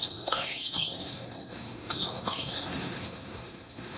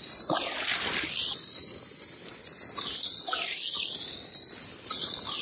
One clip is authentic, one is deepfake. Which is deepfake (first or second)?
first